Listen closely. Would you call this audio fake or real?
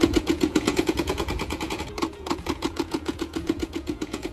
fake